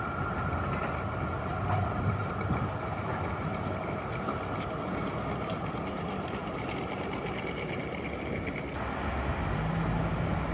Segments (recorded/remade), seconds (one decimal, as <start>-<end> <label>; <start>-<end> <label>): 0.0-10.5 recorded